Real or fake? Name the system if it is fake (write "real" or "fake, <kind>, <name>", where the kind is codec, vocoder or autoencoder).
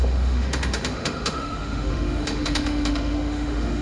fake, autoencoder, DAC-VAE